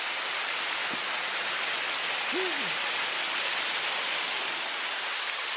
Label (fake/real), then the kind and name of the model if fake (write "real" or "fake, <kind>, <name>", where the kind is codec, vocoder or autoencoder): real